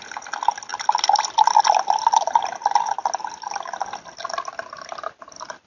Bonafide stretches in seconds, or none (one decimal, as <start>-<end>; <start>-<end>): 0.0-5.7